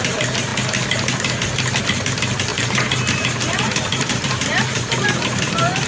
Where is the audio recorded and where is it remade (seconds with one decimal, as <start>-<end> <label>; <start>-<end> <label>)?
0.0-0.5 remade; 0.5-1.8 recorded; 1.8-5.9 remade